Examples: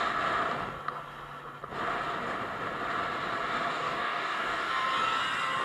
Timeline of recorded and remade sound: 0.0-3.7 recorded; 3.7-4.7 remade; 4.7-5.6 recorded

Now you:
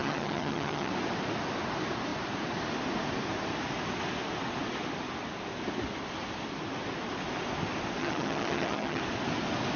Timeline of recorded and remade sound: 0.0-0.9 remade; 0.9-8.0 recorded; 8.0-9.0 remade; 9.0-9.8 recorded

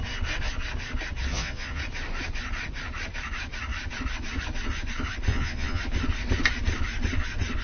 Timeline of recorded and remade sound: 0.0-1.3 recorded; 1.3-1.8 remade; 1.8-5.3 recorded; 5.3-5.8 remade; 5.8-7.6 recorded

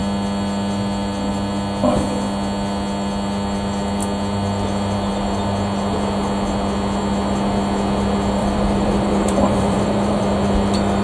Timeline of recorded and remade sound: 0.0-8.4 recorded; 8.4-10.2 remade; 10.2-11.0 recorded